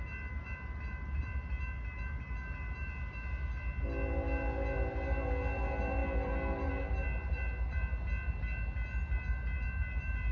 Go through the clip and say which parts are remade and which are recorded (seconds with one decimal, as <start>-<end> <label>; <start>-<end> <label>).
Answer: 0.0-10.3 recorded